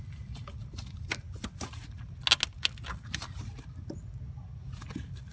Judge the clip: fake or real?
real